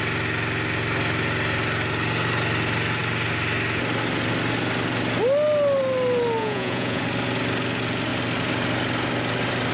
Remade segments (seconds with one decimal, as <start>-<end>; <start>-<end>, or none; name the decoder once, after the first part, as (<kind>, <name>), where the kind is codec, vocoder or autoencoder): 6.4-7.0 (vocoder, Vocos)